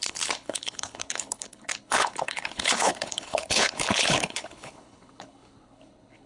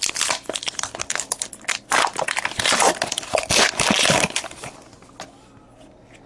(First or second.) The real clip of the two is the second